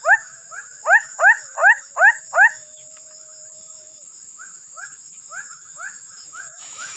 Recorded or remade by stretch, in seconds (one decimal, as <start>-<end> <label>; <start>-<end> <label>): 0.0-7.0 remade